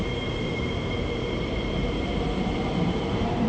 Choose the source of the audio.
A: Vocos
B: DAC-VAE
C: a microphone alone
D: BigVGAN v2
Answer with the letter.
D